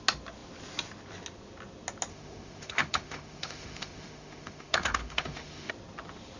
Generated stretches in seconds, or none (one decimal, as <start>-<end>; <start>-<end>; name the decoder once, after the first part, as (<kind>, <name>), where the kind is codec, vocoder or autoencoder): 2.1-5.7 (autoencoder, DAC-VAE)